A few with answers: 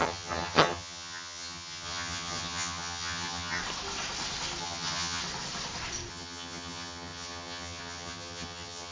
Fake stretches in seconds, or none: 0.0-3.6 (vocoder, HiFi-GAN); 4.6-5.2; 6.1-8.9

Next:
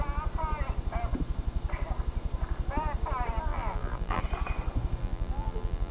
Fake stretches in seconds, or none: 3.5-4.2 (vocoder, BigVGAN v2); 5.0-5.9

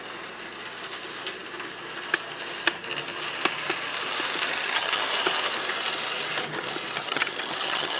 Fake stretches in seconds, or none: 4.5-5.0 (vocoder, HiFi-GAN); 7.0-8.0

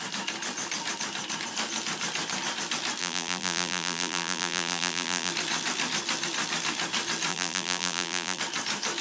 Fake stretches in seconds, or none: 3.0-5.3 (vocoder, BigVGAN v2); 7.3-8.4

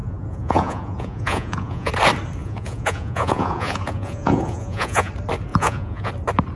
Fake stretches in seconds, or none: 0.0-1.9 (vocoder, Vocos); 2.4-5.1; 5.5-6.1

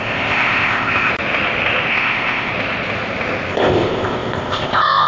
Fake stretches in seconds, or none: 0.0-1.1 (codec, ZipCodec); 1.9-2.5; 3.5-5.1